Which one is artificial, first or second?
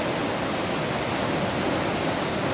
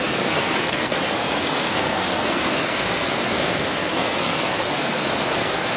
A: second